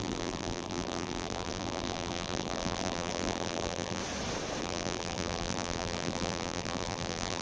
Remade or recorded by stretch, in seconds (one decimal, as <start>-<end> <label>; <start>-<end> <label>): 0.0-4.0 remade; 4.0-4.6 recorded; 4.6-7.4 remade